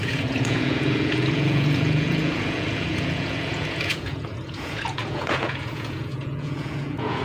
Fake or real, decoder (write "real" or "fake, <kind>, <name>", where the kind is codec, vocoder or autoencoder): fake, vocoder, Vocos